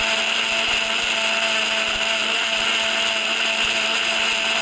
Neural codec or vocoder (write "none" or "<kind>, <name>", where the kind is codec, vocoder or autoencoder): none